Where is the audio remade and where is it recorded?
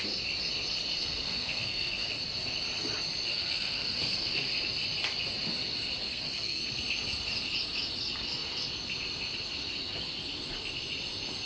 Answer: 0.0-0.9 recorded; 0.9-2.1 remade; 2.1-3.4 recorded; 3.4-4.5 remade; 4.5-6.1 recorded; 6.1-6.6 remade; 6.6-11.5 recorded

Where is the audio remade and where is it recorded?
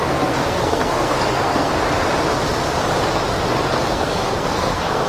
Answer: 0.0-1.7 remade; 1.7-3.8 recorded; 3.8-5.1 remade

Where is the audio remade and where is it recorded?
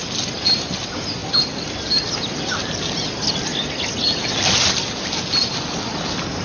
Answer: 0.0-6.4 recorded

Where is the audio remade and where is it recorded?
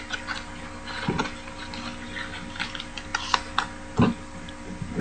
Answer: 0.0-5.0 recorded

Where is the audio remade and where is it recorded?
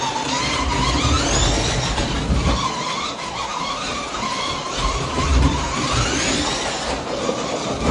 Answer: 0.0-3.5 recorded; 3.5-7.3 remade; 7.3-7.9 recorded